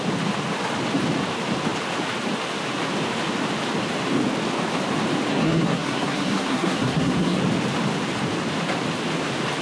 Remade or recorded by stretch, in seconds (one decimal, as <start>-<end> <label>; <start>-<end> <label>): 0.0-5.3 recorded; 5.3-7.4 remade; 7.4-9.6 recorded